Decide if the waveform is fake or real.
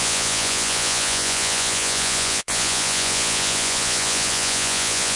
fake